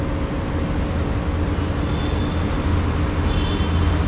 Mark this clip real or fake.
real